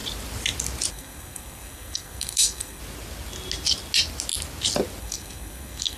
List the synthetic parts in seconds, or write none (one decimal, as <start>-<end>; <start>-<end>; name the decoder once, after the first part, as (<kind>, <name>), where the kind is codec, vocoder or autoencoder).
0.9-2.8 (codec, SNAC); 5.0-6.0

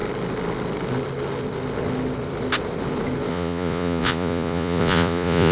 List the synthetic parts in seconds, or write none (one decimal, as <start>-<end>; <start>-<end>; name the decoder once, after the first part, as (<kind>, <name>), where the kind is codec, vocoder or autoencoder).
3.3-5.5 (vocoder, Vocos)